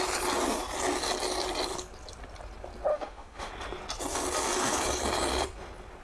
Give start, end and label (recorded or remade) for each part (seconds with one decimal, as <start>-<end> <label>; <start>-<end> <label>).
0.0-2.9 recorded; 2.9-3.5 remade; 3.5-6.0 recorded